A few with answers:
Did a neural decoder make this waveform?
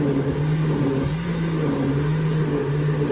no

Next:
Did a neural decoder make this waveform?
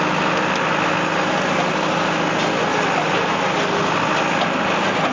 no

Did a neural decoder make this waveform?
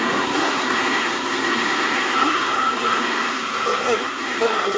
yes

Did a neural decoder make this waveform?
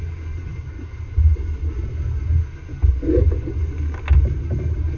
no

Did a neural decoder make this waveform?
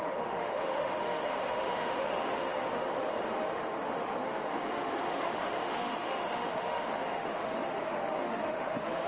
yes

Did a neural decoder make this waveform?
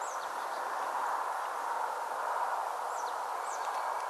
no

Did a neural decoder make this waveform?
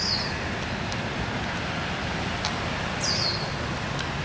no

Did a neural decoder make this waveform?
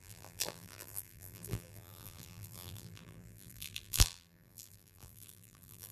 yes